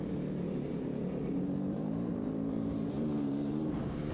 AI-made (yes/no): yes